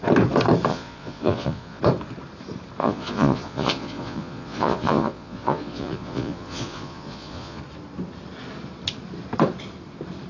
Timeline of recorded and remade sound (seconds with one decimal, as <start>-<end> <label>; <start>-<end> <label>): 0.0-0.7 recorded; 0.7-1.8 remade; 1.8-2.8 recorded; 2.8-7.6 remade; 7.6-10.3 recorded